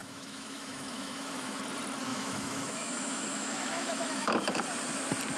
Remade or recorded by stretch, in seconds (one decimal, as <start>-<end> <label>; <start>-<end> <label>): 0.0-1.6 remade; 1.6-2.1 recorded; 2.1-4.6 remade; 4.6-5.4 recorded